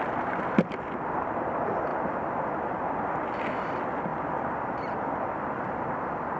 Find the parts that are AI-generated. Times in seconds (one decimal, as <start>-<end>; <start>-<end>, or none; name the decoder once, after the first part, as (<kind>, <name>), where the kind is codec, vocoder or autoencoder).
0.0-6.4 (vocoder, BigVGAN v2)